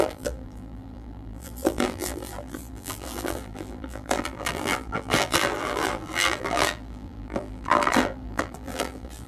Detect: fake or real fake